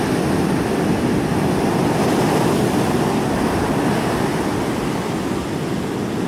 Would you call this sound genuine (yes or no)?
yes